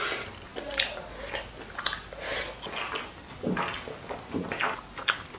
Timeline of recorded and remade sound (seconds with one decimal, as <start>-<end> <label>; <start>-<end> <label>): 0.0-5.4 recorded